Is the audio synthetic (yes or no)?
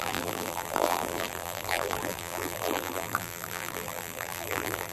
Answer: yes